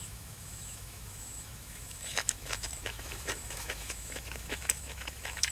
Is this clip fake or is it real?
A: fake